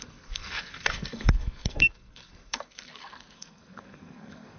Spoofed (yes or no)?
yes